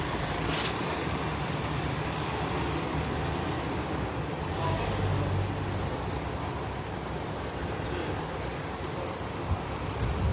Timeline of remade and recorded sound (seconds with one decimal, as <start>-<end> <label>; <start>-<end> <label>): 0.0-10.3 recorded